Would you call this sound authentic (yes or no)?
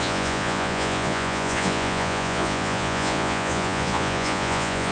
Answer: no